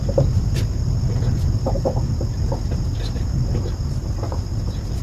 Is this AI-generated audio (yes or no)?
no